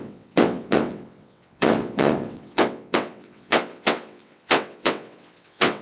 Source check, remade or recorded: remade